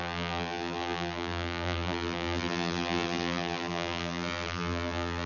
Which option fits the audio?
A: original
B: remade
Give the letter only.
B